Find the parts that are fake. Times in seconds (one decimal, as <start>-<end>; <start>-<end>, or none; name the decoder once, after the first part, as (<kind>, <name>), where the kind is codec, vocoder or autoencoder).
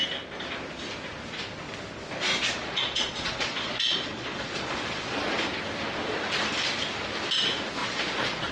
2.6-5.4 (vocoder, Vocos); 7.8-8.5